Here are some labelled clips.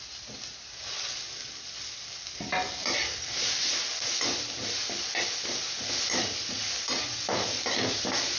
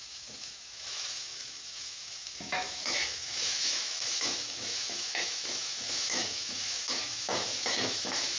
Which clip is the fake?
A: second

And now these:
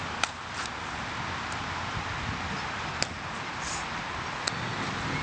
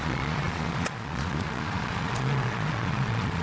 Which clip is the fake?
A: second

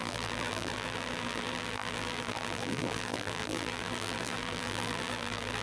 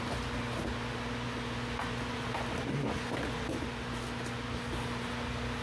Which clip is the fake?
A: first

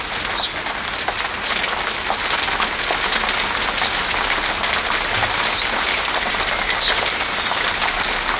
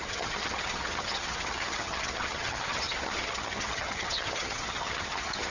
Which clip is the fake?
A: second